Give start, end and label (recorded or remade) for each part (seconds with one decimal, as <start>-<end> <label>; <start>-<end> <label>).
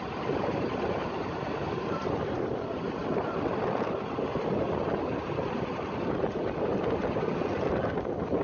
0.0-3.0 remade; 3.0-5.0 recorded; 5.0-8.4 remade